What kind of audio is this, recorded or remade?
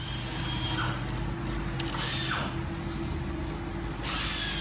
recorded